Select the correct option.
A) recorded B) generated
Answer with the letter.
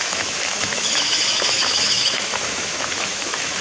B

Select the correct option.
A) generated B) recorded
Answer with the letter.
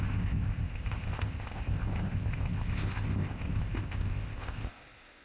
A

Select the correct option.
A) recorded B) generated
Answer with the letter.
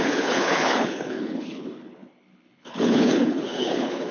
B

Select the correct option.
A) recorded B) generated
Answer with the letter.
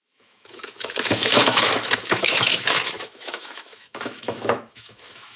B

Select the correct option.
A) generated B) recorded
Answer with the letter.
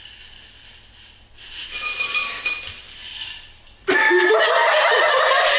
B